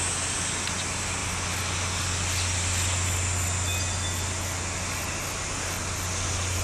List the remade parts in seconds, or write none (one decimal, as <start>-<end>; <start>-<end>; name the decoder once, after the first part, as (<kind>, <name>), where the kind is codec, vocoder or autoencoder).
none